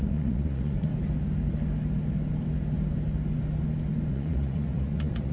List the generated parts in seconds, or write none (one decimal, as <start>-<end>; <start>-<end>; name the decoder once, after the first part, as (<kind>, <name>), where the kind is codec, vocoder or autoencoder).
0.0-0.9 (vocoder, Vocos); 4.1-5.3